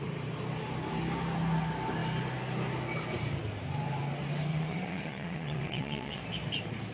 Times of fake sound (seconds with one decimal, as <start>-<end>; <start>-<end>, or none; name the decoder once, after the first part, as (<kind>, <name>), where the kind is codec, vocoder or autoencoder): 4.5-6.2 (vocoder, WaveNeXt)

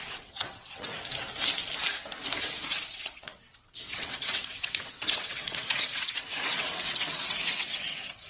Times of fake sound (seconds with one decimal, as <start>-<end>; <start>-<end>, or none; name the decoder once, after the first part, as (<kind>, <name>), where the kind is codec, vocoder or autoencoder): 0.0-0.9 (vocoder, WaveNeXt); 2.8-8.3

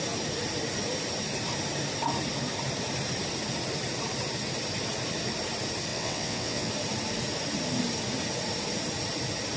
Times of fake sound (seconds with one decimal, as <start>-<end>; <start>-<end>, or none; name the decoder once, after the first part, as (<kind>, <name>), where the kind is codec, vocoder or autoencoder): 5.9-6.7 (vocoder, WaveNeXt)

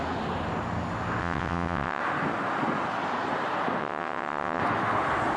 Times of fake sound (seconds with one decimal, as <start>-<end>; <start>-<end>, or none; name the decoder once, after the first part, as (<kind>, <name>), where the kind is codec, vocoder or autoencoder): 1.2-2.0 (vocoder, WaveNeXt); 3.8-4.6

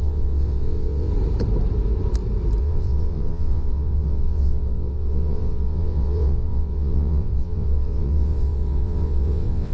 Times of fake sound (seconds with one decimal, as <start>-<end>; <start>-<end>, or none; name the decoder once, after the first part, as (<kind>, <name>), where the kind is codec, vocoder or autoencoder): 0.0-1.1 (vocoder, WaveNeXt); 2.6-9.7

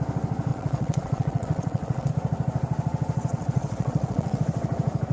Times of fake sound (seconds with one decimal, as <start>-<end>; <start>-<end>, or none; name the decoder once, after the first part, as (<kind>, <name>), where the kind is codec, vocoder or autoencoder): 0.5-2.1 (vocoder, WaveNeXt); 3.3-4.4

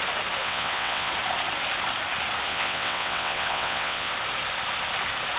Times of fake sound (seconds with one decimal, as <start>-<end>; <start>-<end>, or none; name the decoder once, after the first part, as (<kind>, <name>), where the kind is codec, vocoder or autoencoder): 0.4-1.1 (vocoder, WaveNeXt); 2.5-4.1

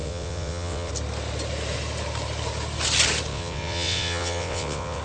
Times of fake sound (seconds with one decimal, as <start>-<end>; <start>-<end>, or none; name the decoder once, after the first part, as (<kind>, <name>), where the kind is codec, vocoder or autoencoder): 0.0-0.9 (vocoder, WaveNeXt); 3.3-5.0